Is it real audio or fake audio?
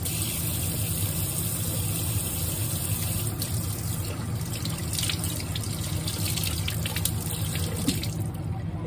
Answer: real